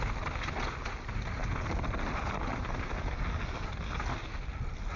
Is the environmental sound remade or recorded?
recorded